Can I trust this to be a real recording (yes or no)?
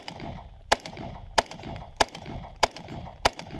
no